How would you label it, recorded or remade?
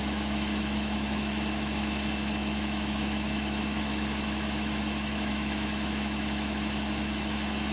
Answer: remade